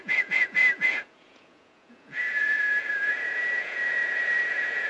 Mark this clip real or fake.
fake